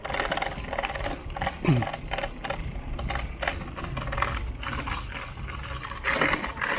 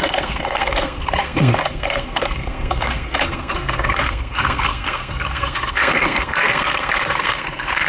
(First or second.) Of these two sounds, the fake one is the second